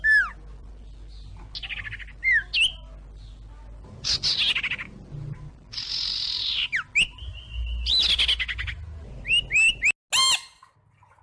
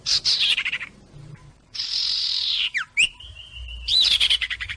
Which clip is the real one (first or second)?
first